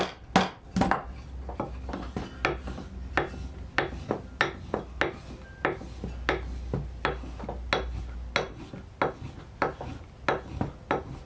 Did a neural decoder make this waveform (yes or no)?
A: no